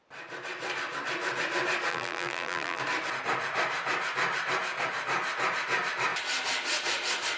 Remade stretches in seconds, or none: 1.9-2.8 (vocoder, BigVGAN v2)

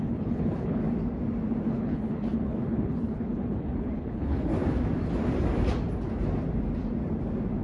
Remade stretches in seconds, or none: 0.0-0.8 (codec, HILCodec); 1.7-4.5

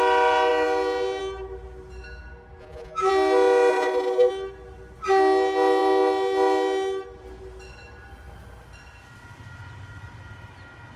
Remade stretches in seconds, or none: 2.6-3.1 (vocoder, Vocos); 3.7-4.3

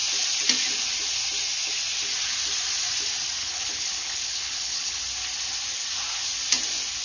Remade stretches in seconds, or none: 3.4-5.0 (codec, HILCodec)

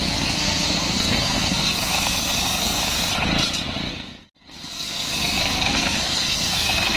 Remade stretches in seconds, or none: 0.0-2.8 (codec, SNAC); 3.9-7.0

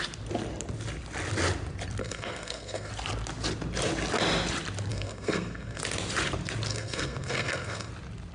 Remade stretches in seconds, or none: 2.0-2.9 (codec, SNAC); 4.9-5.8; 6.7-7.9

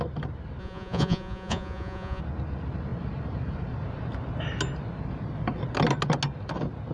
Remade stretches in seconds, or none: 0.6-2.2 (vocoder, Vocos)

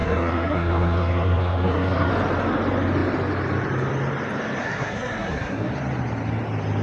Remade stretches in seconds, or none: 0.0-2.1 (codec, SNAC); 4.6-5.7